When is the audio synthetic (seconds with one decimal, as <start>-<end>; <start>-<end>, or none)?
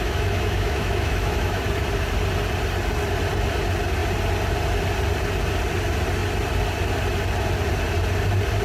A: 0.0-1.6